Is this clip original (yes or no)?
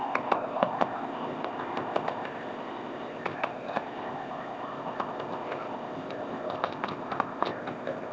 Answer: no